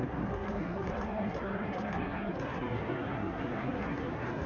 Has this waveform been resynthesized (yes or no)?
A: yes